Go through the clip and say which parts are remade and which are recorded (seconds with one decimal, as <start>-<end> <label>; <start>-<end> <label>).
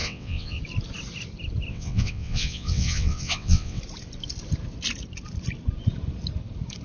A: 0.0-0.6 remade; 0.6-1.7 recorded; 1.7-3.8 remade; 3.8-6.8 recorded